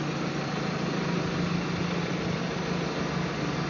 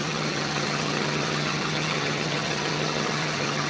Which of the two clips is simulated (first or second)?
second